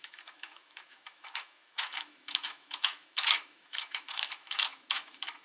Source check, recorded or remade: remade